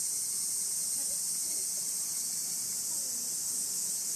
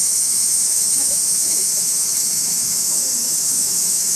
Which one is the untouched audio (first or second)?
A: first